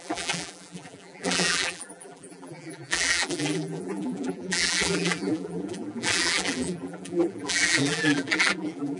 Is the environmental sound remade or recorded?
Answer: remade